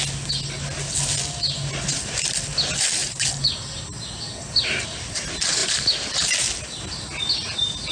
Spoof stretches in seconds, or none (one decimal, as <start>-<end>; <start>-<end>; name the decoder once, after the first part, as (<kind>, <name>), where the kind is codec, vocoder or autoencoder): 3.0-3.8 (vocoder, BigVGAN v2)